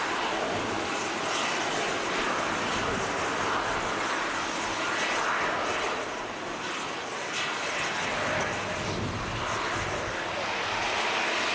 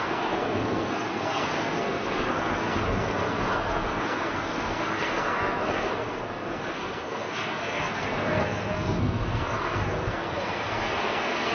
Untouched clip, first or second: first